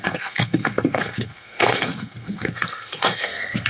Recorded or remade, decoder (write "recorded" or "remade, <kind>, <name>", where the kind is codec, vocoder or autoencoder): remade, codec, SNAC